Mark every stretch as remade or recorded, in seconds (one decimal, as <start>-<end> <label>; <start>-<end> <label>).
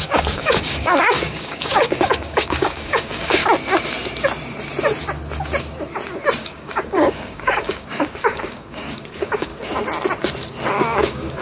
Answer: 0.0-3.4 remade; 3.4-6.4 recorded; 6.4-9.5 remade; 9.5-10.7 recorded; 10.7-11.4 remade